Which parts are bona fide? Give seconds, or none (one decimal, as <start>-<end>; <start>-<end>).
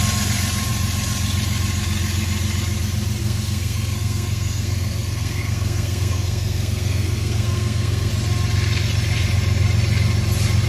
0.0-3.2; 8.1-10.7